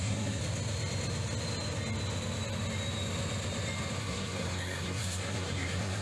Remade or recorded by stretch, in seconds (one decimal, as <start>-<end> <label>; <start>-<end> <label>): 0.0-0.4 remade; 0.4-4.0 recorded; 4.0-6.0 remade